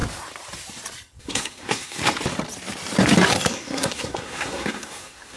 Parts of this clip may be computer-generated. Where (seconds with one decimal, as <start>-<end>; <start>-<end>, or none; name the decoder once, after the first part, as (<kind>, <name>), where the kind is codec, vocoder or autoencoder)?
1.2-2.0 (codec, SNAC); 3.5-5.4